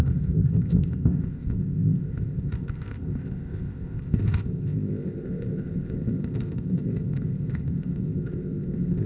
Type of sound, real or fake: fake